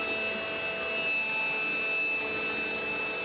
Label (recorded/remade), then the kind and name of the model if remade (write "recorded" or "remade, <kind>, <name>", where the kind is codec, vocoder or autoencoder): recorded